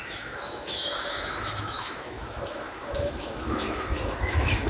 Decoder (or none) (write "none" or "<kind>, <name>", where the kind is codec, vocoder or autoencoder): autoencoder, DAC-VAE